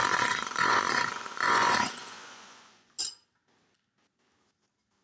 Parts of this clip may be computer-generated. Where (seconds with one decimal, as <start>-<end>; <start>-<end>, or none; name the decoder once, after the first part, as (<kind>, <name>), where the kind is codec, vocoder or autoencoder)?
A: 0.0-3.0 (vocoder, Vocos)